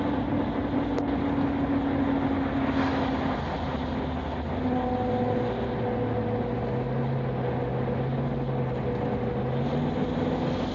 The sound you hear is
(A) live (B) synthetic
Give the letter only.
A